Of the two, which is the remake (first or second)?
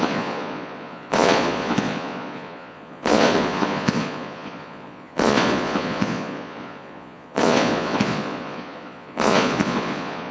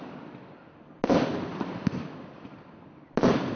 first